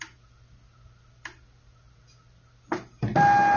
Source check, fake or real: real